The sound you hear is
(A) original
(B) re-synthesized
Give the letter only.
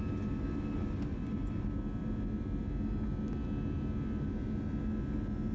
A